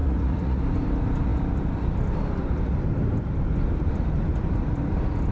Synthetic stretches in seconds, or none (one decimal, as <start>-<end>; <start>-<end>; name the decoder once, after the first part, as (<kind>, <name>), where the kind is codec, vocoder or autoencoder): 0.0-0.6 (vocoder, Vocos)